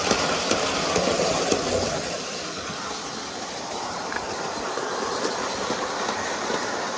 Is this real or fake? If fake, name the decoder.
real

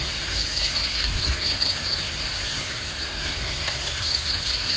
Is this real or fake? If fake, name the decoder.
fake, codec, SNAC